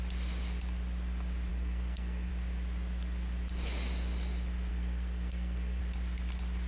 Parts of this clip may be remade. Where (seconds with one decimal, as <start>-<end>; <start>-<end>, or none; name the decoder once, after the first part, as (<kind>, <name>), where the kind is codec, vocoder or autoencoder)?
1.5-2.3 (codec, SNAC); 4.7-5.8